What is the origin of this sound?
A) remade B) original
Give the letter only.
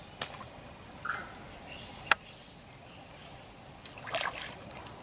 B